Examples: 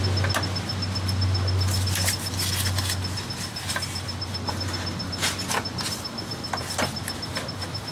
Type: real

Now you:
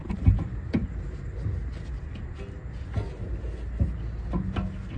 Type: real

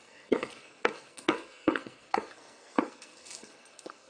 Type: fake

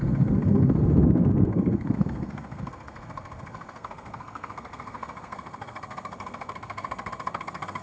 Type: fake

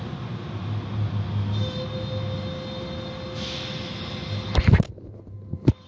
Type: real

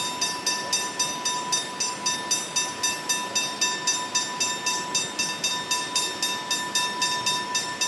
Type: real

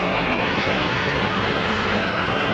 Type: fake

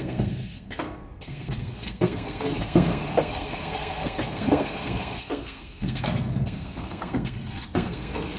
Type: fake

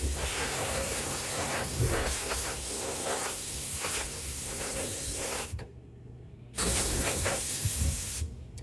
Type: fake